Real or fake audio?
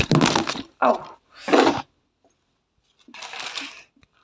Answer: real